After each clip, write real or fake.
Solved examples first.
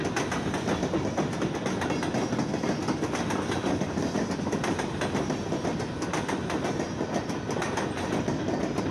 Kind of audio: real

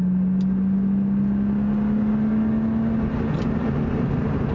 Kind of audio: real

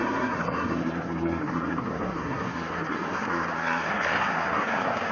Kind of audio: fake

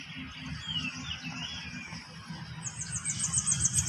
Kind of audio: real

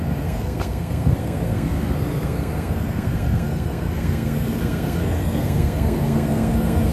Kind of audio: fake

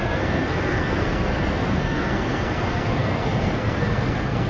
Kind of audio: fake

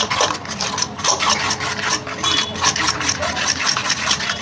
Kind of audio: real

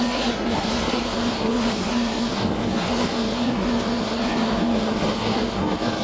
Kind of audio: fake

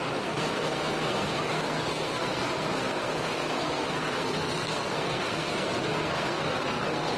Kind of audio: fake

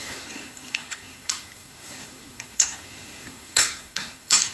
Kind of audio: fake